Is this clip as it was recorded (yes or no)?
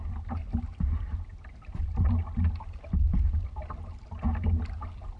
yes